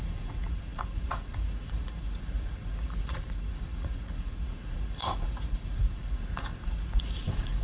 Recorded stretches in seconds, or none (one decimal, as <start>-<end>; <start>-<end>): none